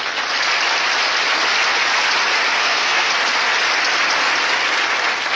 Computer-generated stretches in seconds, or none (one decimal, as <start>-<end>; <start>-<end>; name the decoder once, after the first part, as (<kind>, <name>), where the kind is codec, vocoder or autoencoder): 2.6-3.1 (codec, SNAC)